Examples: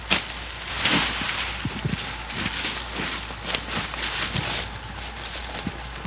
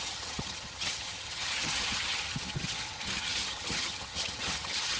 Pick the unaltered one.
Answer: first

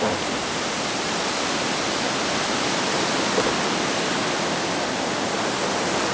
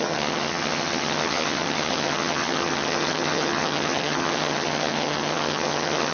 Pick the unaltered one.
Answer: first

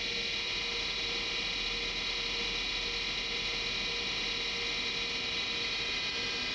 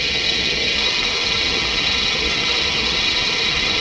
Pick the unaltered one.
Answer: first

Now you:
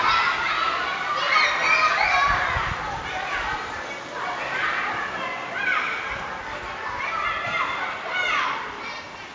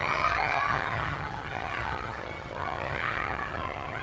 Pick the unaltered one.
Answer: first